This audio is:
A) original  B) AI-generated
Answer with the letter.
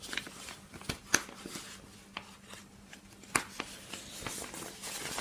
A